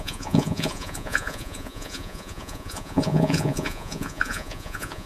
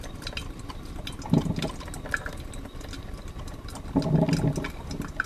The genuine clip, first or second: second